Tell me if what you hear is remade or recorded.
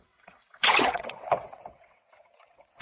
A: remade